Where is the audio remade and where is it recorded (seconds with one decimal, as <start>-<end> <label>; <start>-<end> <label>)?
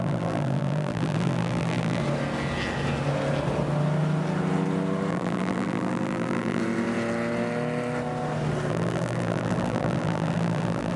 0.0-2.0 remade; 2.0-5.1 recorded; 5.1-6.6 remade; 6.6-8.7 recorded; 8.7-11.0 remade